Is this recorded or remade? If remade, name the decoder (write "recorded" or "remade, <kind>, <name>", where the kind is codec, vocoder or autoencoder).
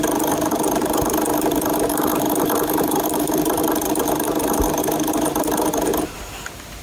remade, vocoder, BigVGAN v2